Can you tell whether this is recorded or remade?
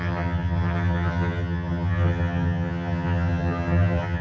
remade